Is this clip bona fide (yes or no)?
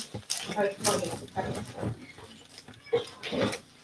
yes